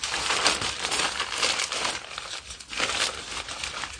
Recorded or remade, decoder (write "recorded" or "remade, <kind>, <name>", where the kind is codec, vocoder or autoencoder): recorded